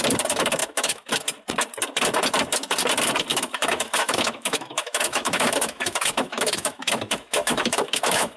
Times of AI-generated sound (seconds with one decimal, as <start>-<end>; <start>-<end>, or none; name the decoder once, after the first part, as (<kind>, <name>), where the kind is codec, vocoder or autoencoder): 0.6-1.1 (autoencoder, DAC-VAE); 3.3-8.4